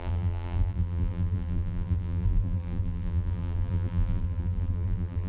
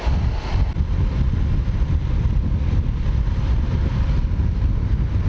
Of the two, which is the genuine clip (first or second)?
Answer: second